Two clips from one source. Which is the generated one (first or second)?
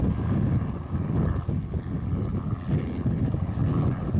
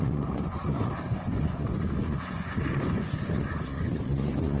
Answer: second